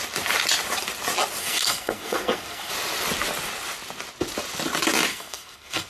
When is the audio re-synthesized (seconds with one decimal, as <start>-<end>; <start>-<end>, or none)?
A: 1.4-2.7; 5.1-5.9